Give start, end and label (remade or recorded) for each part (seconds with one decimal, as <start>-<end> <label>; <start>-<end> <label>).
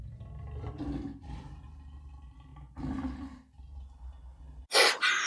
0.0-5.3 recorded